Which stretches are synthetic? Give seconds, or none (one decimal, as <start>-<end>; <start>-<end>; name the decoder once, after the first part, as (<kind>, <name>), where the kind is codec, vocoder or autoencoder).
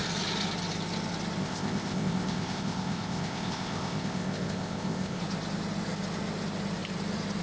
1.4-5.2 (codec, ZipCodec)